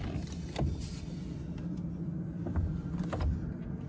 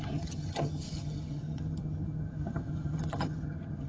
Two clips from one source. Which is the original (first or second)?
first